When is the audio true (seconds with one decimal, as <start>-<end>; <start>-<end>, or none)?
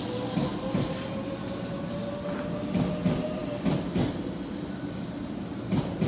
0.0-6.1